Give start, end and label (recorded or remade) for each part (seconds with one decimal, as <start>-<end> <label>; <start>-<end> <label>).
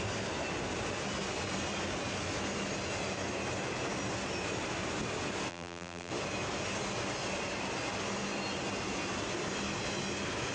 0.0-5.5 recorded; 5.5-6.1 remade; 6.1-10.5 recorded